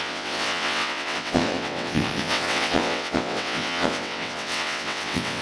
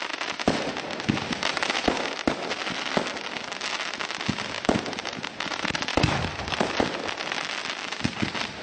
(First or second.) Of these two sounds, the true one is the second